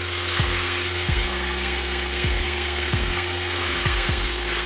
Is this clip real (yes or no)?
no